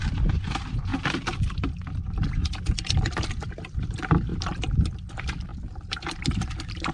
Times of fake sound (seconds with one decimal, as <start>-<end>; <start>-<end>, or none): 0.0-5.5; 6.0-6.9